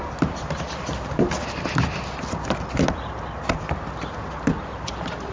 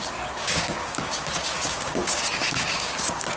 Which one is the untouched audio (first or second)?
first